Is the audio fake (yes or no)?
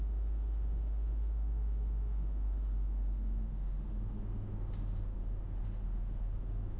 yes